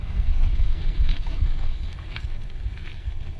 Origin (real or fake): fake